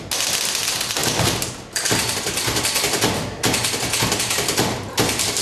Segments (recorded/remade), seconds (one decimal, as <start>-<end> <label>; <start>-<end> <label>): 0.0-5.4 recorded

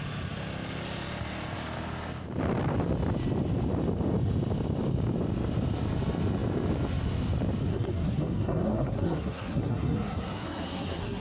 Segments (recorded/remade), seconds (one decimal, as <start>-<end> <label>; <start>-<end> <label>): 0.0-7.7 recorded; 7.7-11.2 remade

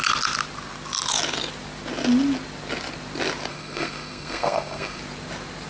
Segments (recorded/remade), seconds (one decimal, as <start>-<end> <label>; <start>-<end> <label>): 0.0-3.5 recorded; 3.5-5.0 remade; 5.0-5.7 recorded

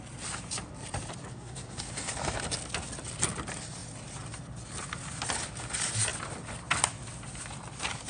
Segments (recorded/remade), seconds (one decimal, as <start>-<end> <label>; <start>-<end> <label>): 0.0-1.3 recorded; 1.3-1.8 remade; 1.8-8.1 recorded

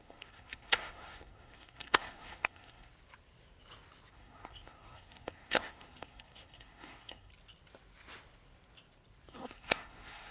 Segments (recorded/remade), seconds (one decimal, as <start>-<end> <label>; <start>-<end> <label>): 0.0-2.9 remade; 2.9-4.1 recorded; 4.1-7.3 remade; 7.3-9.3 recorded; 9.3-10.3 remade

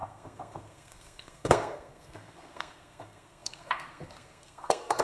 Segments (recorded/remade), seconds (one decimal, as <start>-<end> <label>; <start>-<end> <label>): 0.0-5.0 remade

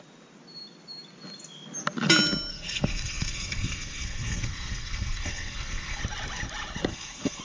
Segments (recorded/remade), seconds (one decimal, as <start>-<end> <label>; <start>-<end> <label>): 0.0-2.5 recorded; 2.5-6.0 remade; 6.0-6.9 recorded; 6.9-7.4 remade

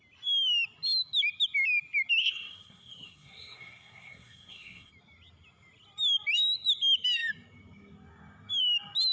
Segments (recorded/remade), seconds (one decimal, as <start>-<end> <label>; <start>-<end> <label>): 0.0-2.2 recorded; 2.2-4.9 remade; 4.9-9.1 recorded